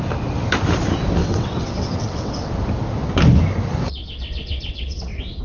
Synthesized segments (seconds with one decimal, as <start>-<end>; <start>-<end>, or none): 1.2-2.5; 3.8-5.4